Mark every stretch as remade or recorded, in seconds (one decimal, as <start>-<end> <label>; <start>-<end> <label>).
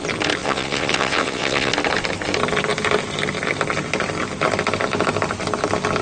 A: 0.0-0.4 recorded; 0.4-1.7 remade; 1.7-6.0 recorded